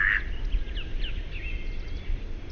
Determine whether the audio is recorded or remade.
recorded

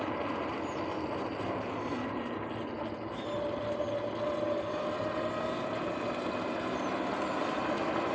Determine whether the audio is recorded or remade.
recorded